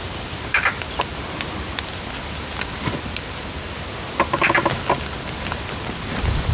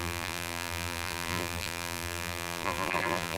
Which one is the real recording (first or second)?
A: first